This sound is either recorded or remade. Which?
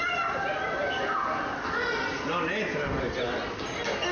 recorded